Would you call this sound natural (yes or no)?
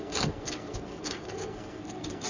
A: no